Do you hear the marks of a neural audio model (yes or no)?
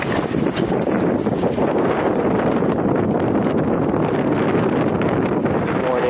no